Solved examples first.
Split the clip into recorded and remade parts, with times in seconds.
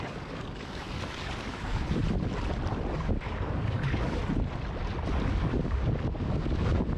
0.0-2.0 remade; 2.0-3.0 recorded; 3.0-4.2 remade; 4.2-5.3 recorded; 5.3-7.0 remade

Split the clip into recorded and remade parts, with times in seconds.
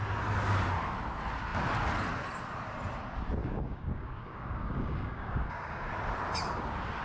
0.0-3.4 recorded; 3.4-5.9 remade; 5.9-7.0 recorded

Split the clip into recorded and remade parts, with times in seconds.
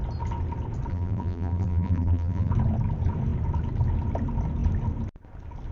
0.0-0.9 recorded; 0.9-2.5 remade; 2.5-5.7 recorded